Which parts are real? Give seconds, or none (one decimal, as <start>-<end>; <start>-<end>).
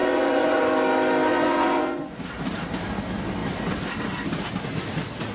0.6-1.3; 2.2-5.3